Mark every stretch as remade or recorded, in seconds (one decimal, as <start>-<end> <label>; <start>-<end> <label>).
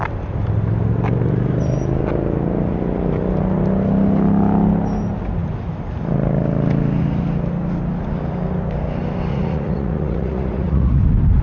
0.0-9.3 recorded; 9.3-11.0 remade; 11.0-11.4 recorded